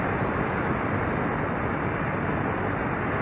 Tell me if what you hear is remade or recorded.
recorded